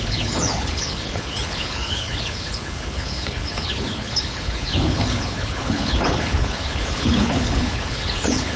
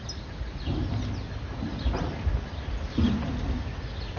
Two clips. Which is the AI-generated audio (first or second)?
first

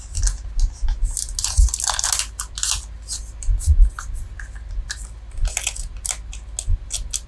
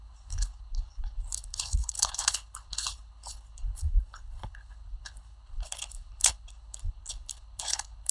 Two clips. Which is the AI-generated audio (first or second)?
second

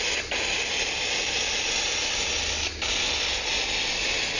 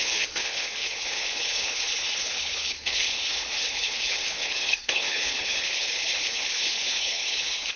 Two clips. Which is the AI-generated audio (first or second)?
second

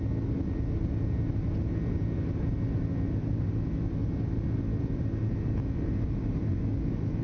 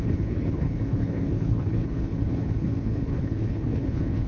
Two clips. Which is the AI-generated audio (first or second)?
second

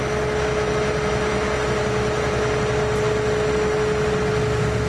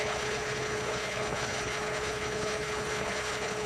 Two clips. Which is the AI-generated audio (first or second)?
second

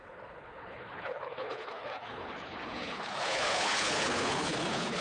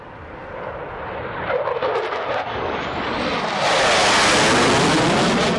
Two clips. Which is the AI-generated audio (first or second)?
first